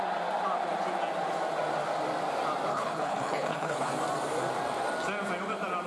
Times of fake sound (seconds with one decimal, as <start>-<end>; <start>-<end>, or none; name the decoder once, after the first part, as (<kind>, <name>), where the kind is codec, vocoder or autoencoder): 2.7-3.9 (codec, HILCodec)